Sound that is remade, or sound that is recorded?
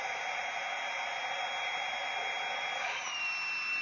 recorded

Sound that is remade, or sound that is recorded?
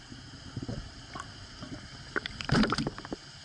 remade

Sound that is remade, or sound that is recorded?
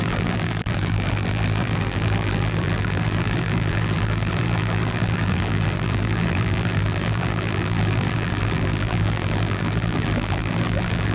remade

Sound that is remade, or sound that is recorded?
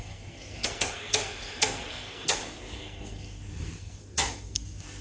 remade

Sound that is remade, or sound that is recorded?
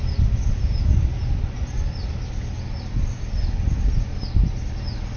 recorded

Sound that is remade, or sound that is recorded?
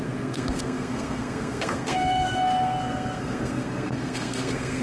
remade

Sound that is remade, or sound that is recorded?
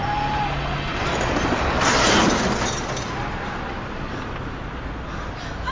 recorded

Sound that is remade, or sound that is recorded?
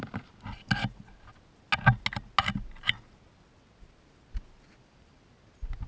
recorded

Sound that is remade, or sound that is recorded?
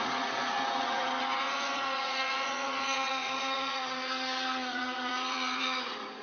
remade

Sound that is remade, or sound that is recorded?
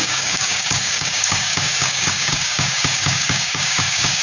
remade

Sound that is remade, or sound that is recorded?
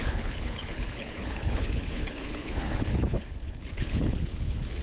remade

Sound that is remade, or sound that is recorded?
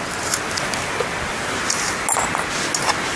recorded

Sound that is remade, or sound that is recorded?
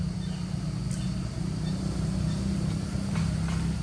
recorded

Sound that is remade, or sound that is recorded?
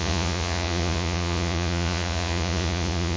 remade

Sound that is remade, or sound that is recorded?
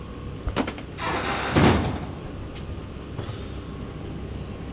recorded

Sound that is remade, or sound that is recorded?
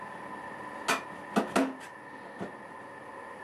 recorded